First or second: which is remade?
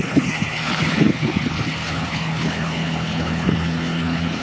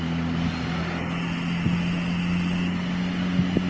first